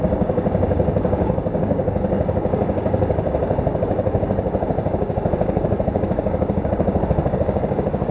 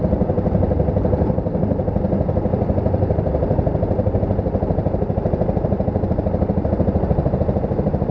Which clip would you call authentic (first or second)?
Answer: second